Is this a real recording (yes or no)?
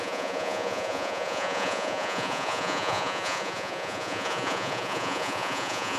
no